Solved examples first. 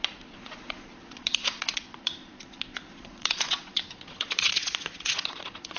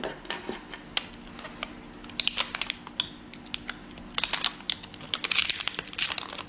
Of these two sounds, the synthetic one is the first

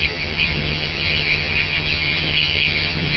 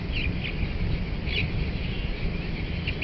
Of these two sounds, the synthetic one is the first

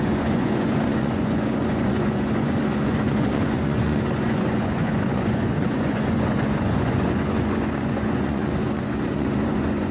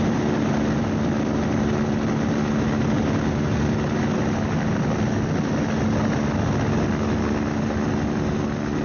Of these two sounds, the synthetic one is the first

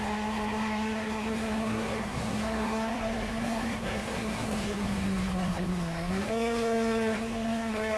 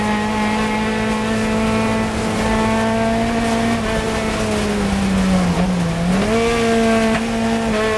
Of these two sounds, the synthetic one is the first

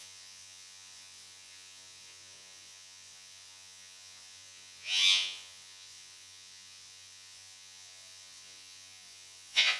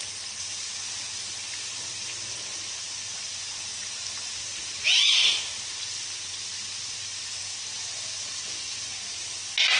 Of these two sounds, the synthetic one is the first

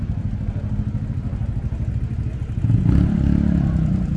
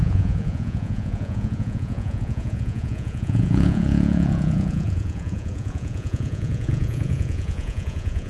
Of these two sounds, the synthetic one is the second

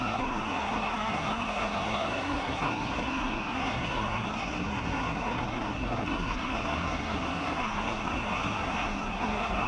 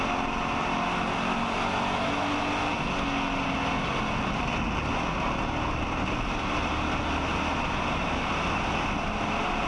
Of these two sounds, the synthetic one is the first